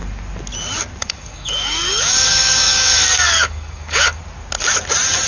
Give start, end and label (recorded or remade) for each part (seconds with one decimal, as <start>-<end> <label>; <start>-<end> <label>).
0.0-1.0 recorded; 1.0-4.2 remade; 4.2-5.3 recorded